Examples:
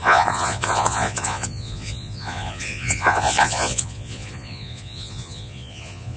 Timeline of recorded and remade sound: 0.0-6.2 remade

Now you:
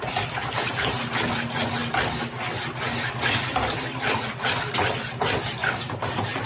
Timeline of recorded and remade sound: 0.0-6.5 recorded

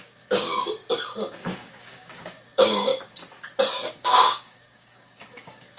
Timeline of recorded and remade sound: 0.0-0.8 remade; 0.8-1.4 recorded; 1.4-2.9 remade; 2.9-3.9 recorded; 3.9-5.8 remade

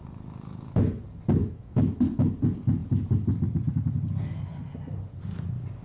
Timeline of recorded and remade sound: 0.0-1.4 recorded; 1.4-2.3 remade; 2.3-5.8 recorded

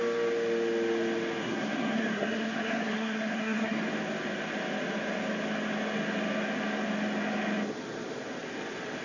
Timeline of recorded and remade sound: 0.0-1.4 recorded; 1.4-3.8 remade; 3.8-9.0 recorded

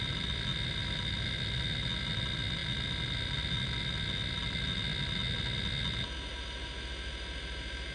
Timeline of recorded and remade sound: 0.0-7.9 recorded

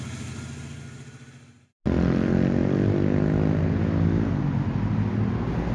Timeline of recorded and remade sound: 0.0-5.7 recorded